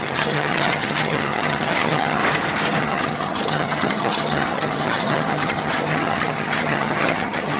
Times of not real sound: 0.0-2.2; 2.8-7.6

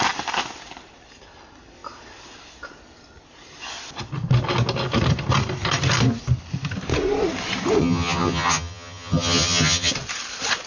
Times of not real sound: 7.8-9.9